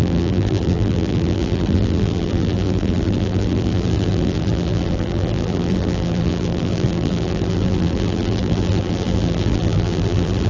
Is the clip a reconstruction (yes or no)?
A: yes